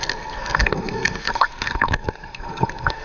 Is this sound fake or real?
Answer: fake